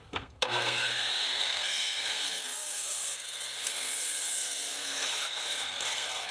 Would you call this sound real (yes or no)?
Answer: no